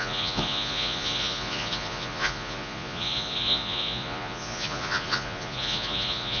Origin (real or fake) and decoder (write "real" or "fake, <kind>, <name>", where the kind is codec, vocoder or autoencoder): fake, vocoder, Vocos